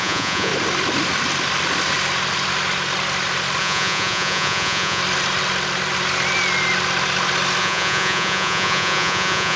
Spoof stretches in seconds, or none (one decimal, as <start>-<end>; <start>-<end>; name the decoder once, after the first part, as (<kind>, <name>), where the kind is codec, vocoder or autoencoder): 0.0-0.5 (vocoder, Vocos); 3.6-5.0; 7.6-9.6